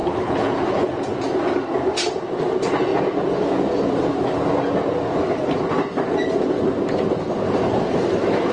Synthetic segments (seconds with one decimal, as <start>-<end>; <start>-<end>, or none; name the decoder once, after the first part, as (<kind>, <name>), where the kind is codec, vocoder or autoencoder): 0.0-1.0 (codec, HILCodec)